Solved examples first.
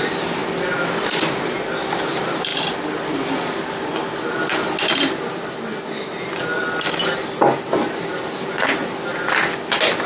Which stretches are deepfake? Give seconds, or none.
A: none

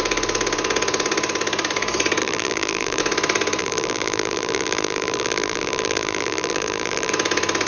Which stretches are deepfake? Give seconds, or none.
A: 2.2-3.0; 3.6-7.1

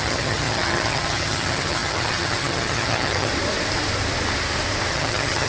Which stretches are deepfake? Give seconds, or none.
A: 0.0-3.3; 4.9-5.5

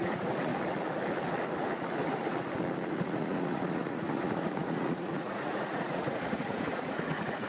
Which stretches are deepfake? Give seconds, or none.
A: 0.0-0.5; 2.9-7.5